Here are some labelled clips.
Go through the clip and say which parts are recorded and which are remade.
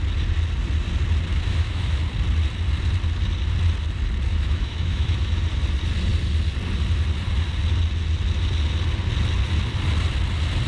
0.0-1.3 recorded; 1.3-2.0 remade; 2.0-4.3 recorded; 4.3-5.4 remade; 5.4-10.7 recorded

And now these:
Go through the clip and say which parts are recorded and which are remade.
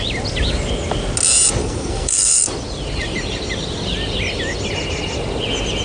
0.0-1.6 recorded; 1.6-2.5 remade; 2.5-5.8 recorded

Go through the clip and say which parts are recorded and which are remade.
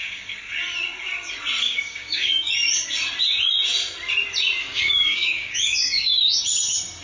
0.0-0.5 remade; 0.5-1.6 recorded; 1.6-2.5 remade; 2.5-4.6 recorded; 4.6-6.4 remade; 6.4-7.0 recorded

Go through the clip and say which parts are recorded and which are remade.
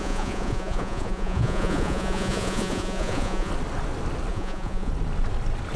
0.0-3.5 remade; 3.5-4.3 recorded; 4.3-4.9 remade; 4.9-5.8 recorded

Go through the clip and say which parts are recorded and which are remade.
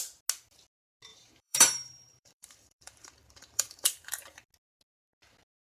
0.0-1.1 recorded; 1.1-4.5 remade; 4.5-5.7 recorded